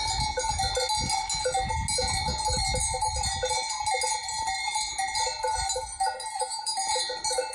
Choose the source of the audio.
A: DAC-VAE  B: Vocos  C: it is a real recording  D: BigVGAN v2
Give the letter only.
C